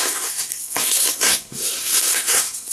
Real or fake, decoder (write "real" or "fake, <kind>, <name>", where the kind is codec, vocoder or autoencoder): fake, codec, SNAC